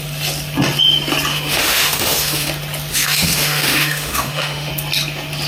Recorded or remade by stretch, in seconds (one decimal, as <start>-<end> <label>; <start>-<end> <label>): 0.0-1.3 recorded; 1.3-2.5 remade; 2.5-2.9 recorded; 2.9-4.7 remade; 4.7-5.5 recorded